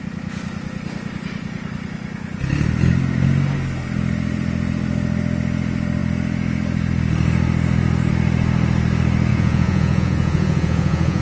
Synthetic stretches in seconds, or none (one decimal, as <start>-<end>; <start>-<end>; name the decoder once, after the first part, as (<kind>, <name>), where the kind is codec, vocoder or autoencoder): 9.3-11.2 (vocoder, Vocos)